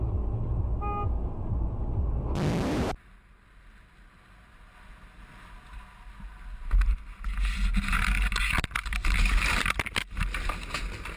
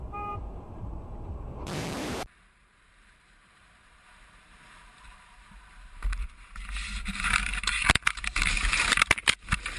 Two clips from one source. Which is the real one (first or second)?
first